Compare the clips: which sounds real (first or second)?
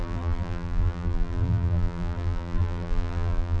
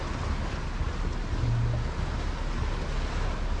second